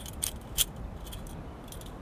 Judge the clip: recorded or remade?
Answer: recorded